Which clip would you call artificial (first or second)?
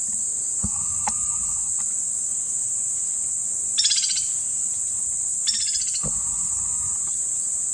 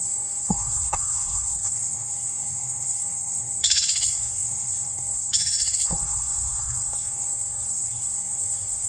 second